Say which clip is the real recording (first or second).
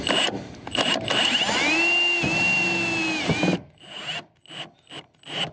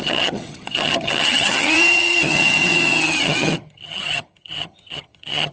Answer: first